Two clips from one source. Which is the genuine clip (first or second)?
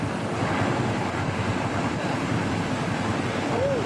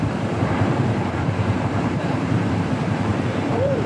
first